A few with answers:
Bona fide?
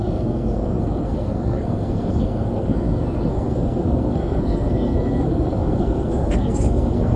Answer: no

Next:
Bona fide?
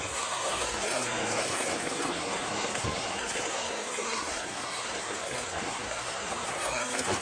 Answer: no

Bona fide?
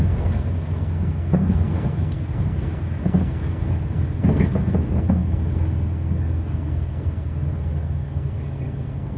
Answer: no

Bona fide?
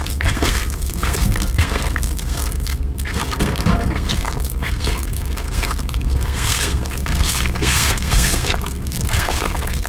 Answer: no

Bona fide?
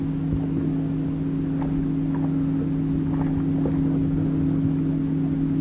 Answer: yes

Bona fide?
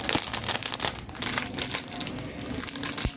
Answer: yes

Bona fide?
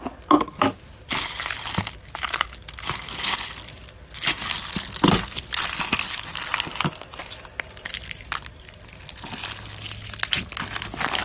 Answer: yes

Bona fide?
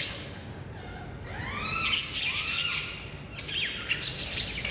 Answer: yes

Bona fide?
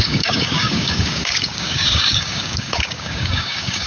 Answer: no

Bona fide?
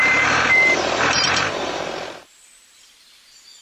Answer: no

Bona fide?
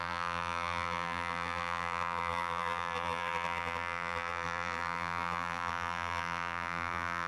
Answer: no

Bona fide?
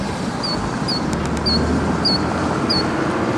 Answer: yes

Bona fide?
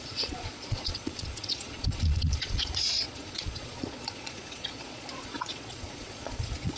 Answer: no